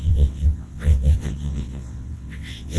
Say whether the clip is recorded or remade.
remade